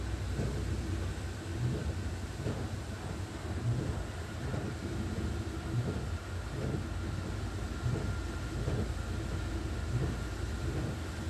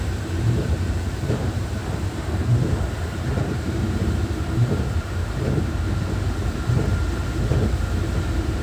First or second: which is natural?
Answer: first